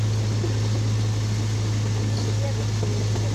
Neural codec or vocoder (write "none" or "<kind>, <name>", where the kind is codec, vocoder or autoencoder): none